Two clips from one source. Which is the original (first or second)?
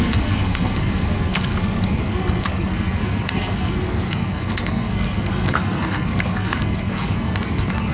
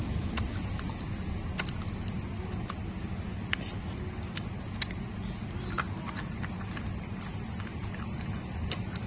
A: second